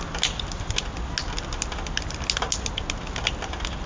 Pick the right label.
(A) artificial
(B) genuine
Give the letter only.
B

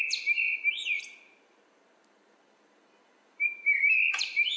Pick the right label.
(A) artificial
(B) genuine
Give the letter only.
A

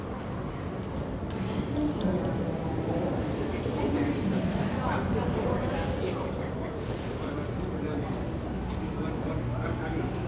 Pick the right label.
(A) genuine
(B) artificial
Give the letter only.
A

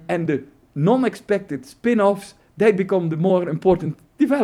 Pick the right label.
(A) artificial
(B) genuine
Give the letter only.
A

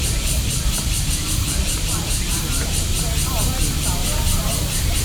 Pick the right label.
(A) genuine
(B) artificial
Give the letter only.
B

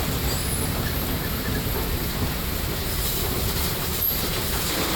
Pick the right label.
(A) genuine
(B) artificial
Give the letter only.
B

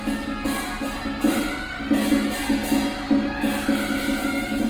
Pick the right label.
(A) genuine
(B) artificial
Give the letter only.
A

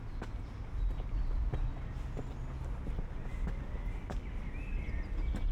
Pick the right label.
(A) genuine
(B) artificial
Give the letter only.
A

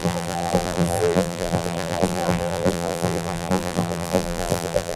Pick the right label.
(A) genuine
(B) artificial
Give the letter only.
B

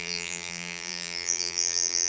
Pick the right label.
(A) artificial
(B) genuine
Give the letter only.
A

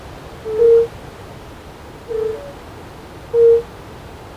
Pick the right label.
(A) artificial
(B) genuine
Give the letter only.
B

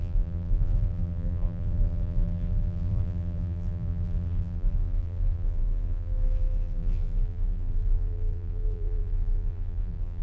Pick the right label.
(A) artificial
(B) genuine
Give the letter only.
A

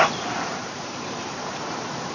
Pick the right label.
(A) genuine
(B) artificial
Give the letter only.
B